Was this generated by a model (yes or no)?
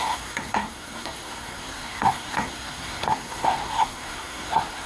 yes